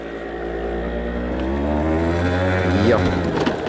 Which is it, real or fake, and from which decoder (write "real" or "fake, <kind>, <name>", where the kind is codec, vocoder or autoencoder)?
real